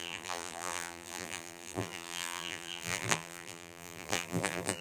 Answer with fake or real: fake